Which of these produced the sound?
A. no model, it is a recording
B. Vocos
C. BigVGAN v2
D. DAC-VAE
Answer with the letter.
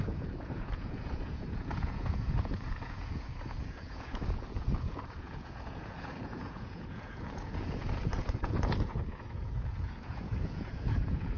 B